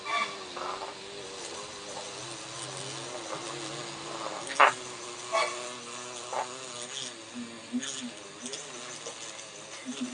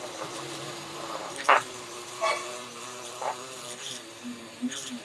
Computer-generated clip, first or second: second